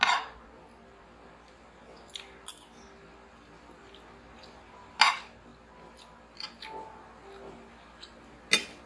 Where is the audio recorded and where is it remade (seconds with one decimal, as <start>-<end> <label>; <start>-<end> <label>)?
0.0-5.5 recorded; 5.5-6.6 remade; 6.6-8.9 recorded